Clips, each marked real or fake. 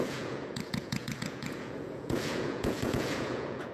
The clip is fake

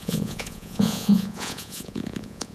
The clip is fake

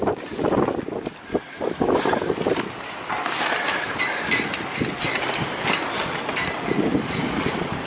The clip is real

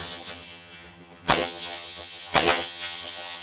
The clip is fake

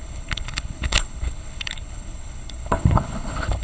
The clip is fake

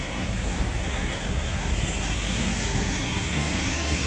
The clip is fake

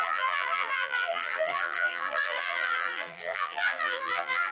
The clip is fake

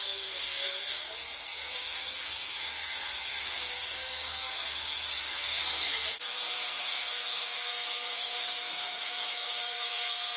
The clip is fake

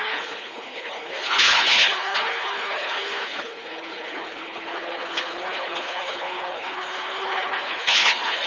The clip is fake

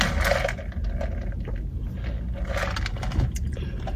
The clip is real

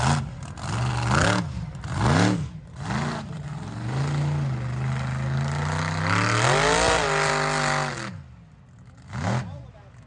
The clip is real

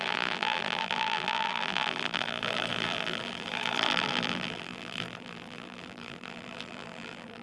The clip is fake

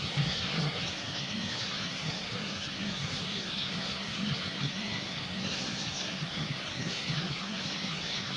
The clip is fake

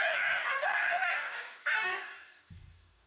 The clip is fake